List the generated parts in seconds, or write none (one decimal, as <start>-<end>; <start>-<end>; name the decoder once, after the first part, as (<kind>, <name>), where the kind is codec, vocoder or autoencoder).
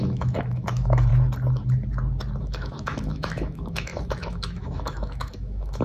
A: 0.0-1.1 (autoencoder, DAC-VAE); 2.4-5.8